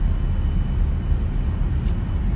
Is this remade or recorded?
recorded